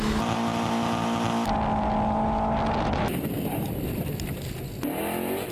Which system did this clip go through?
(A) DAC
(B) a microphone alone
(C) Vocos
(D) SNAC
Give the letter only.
B